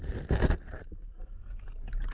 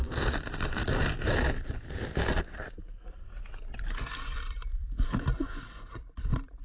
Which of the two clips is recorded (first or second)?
first